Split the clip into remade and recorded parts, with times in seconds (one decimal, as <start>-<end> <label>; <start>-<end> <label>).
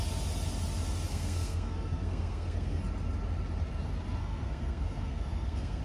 0.0-1.1 recorded; 1.1-2.8 remade; 2.8-4.2 recorded; 4.2-5.8 remade